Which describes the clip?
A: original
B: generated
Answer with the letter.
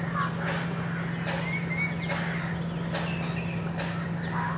A